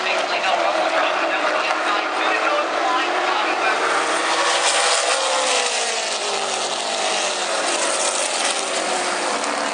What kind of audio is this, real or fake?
real